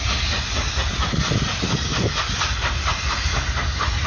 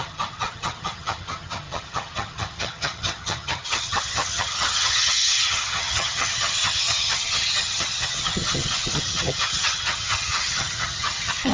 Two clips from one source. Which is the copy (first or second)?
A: second